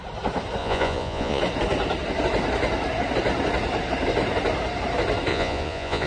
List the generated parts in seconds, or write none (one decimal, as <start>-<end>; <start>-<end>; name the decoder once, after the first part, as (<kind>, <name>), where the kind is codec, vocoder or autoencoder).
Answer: 0.6-1.4 (vocoder, Vocos); 5.3-6.1